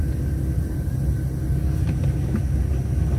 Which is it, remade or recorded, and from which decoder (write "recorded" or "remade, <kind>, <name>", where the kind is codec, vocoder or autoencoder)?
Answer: recorded